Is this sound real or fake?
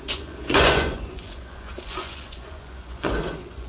fake